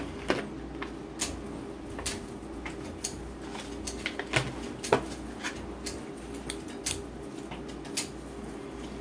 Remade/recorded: recorded